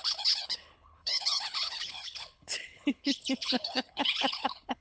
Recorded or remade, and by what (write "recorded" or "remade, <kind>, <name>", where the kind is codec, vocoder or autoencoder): remade, codec, HILCodec